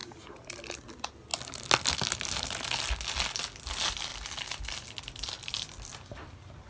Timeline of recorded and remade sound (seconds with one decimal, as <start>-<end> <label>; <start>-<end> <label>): 0.0-6.7 recorded